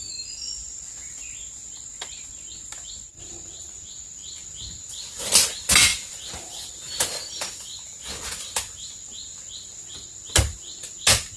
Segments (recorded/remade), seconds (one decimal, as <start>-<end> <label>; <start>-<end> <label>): 0.0-11.4 recorded